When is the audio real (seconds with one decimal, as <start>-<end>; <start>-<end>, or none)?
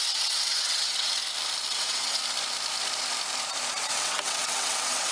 1.2-1.7; 2.2-3.9